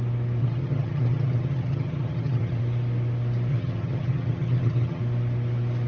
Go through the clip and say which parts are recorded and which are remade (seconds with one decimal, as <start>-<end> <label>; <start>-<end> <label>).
0.0-0.4 recorded; 0.4-2.6 remade; 2.6-3.5 recorded; 3.5-5.0 remade; 5.0-5.9 recorded